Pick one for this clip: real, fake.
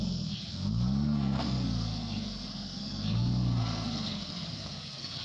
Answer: fake